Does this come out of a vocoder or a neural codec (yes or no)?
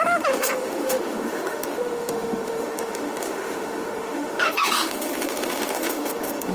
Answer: yes